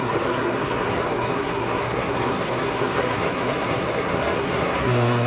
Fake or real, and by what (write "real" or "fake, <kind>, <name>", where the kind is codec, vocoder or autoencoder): fake, codec, SNAC